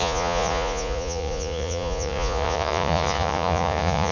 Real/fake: fake